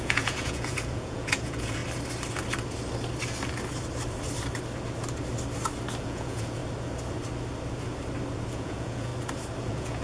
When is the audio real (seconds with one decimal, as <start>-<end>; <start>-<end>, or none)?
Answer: 1.8-6.0; 6.6-8.5; 9.1-9.6